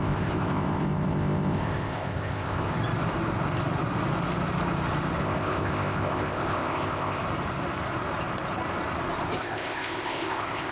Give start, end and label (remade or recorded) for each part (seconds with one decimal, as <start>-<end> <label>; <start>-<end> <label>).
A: 0.0-2.7 remade; 2.7-5.2 recorded; 5.2-7.2 remade; 7.2-9.4 recorded; 9.4-10.7 remade